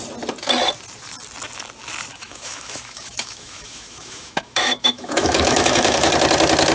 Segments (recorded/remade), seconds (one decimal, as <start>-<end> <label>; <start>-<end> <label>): 0.0-2.1 recorded; 2.1-6.1 remade; 6.1-6.7 recorded